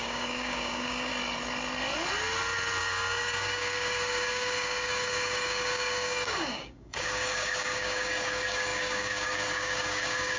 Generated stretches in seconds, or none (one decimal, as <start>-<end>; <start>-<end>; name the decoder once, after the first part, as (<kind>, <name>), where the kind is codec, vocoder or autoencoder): 0.0-1.1 (codec, DAC); 2.8-10.4